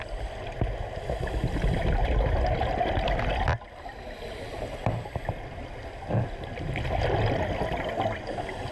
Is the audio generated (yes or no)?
no